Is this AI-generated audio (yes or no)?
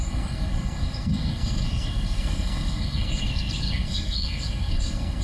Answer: yes